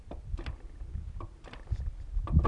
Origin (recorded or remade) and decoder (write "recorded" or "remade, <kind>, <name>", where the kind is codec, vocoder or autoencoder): recorded